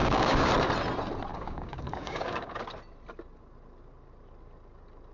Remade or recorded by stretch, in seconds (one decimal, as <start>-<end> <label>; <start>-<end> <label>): 0.0-0.5 remade; 0.5-1.3 recorded; 1.3-2.6 remade; 2.6-5.1 recorded